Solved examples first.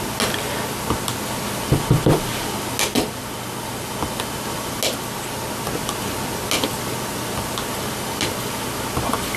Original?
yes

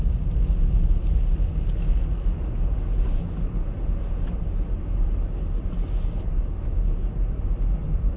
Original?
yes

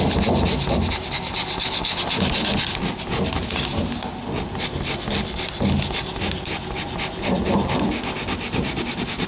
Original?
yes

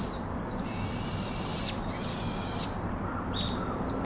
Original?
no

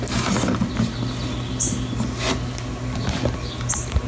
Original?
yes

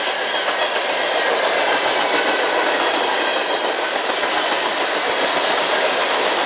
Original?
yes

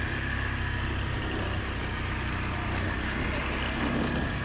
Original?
yes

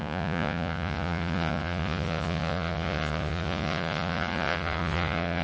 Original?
no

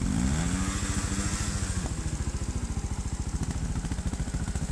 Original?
yes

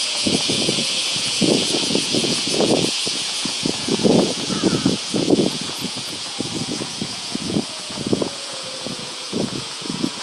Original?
no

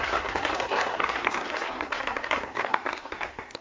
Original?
no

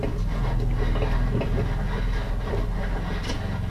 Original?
yes